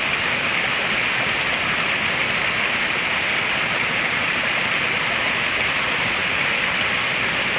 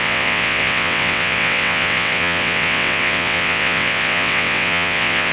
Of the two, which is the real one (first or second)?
first